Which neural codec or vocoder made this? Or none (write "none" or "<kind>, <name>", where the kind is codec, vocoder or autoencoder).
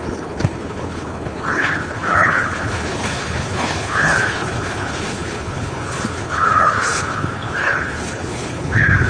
codec, HILCodec